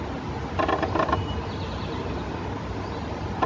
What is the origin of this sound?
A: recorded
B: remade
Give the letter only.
B